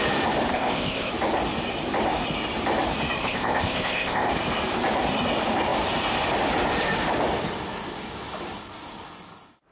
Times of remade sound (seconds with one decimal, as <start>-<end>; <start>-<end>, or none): 0.5-1.1; 3.2-4.3